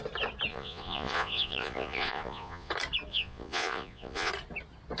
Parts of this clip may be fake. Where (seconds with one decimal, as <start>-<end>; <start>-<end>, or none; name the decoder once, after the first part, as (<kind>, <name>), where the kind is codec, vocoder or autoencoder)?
0.5-2.7 (vocoder, Vocos); 3.1-4.3